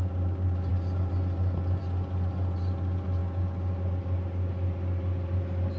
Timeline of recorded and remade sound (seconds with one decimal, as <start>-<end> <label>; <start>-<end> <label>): 0.0-5.8 recorded